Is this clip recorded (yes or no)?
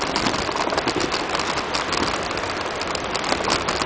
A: yes